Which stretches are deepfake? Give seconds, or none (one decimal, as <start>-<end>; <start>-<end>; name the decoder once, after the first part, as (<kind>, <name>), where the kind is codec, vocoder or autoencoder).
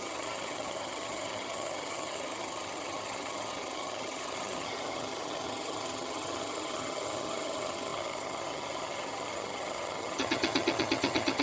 0.0-11.4 (vocoder, HiFi-GAN)